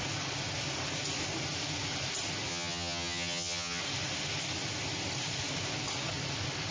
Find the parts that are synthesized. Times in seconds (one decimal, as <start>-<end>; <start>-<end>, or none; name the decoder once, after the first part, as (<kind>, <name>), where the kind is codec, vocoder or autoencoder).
2.5-3.8 (vocoder, HiFi-GAN)